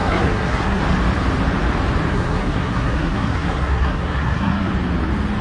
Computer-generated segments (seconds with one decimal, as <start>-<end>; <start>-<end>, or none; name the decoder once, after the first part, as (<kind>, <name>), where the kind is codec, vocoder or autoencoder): 0.0-0.8 (codec, SNAC); 2.1-4.7